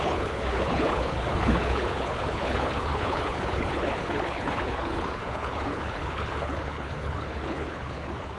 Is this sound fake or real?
fake